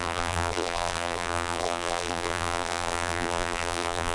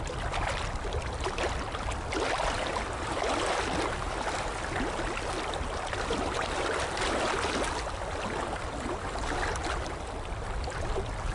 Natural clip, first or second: second